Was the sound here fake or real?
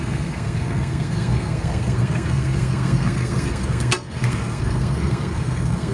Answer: fake